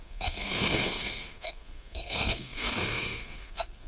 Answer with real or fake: fake